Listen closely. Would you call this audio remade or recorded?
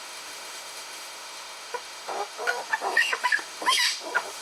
remade